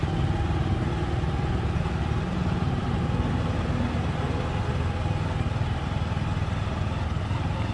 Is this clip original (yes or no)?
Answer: yes